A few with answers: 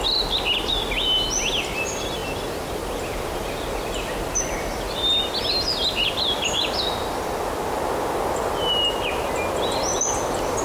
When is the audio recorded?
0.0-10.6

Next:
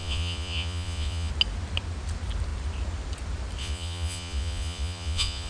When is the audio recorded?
1.3-3.6

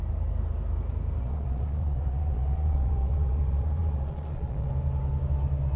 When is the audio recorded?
0.0-1.2; 4.7-5.8